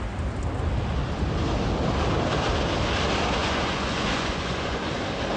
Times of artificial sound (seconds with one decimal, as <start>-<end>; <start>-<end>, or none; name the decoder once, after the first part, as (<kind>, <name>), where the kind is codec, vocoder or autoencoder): 3.4-4.9 (vocoder, Vocos)